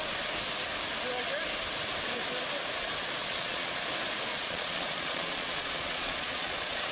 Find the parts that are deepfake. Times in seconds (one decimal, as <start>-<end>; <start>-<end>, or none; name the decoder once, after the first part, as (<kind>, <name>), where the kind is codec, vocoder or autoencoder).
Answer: 3.2-3.8 (vocoder, Vocos); 4.3-6.9